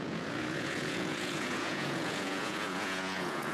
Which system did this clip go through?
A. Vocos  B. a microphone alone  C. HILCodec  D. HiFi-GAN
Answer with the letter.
A